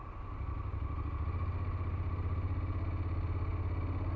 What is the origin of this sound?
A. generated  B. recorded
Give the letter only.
B